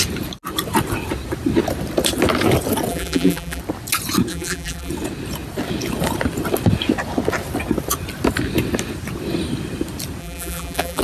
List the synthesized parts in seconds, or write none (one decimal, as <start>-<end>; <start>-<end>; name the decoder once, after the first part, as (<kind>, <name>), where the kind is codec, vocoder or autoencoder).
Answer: 2.9-3.6 (vocoder, BigVGAN v2); 4.3-4.9; 10.2-11.0